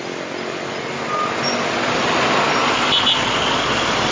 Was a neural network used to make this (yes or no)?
no